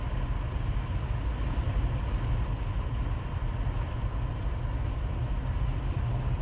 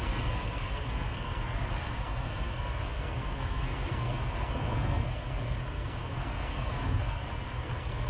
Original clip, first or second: first